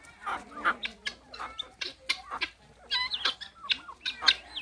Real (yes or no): yes